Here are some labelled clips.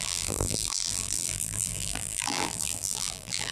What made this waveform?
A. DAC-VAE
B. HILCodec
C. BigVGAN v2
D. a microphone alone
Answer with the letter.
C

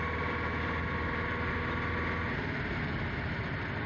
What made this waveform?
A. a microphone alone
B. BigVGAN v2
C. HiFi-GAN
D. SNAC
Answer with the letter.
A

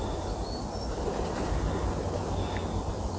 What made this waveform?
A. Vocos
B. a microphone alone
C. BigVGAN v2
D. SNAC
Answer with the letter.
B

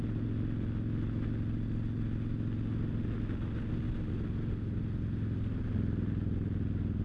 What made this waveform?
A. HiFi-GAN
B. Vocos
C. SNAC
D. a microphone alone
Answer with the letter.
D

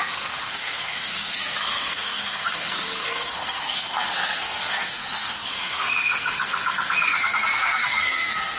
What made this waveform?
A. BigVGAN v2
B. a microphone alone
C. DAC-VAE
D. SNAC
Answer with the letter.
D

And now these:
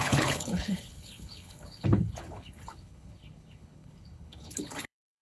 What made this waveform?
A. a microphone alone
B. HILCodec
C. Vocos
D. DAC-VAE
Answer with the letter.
B